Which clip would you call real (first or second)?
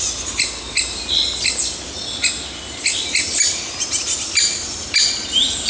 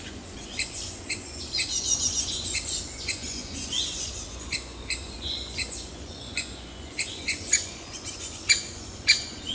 first